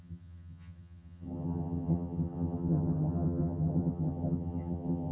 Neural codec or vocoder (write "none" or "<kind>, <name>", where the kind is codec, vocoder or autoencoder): vocoder, HiFi-GAN